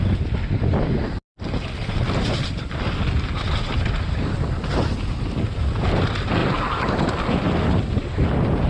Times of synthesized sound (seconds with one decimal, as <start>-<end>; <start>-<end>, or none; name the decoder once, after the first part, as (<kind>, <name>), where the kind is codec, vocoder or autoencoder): 1.8-2.5 (vocoder, BigVGAN v2); 6.4-7.1